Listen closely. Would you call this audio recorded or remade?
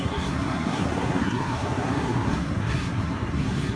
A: remade